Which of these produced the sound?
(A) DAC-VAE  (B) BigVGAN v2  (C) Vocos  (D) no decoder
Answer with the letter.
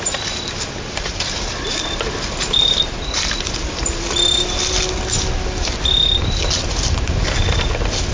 D